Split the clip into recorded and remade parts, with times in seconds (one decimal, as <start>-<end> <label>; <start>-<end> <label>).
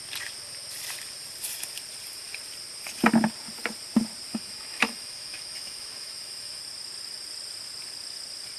0.0-4.3 recorded; 4.3-6.6 remade; 6.6-8.6 recorded